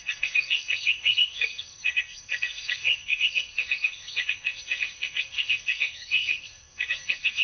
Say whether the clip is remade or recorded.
remade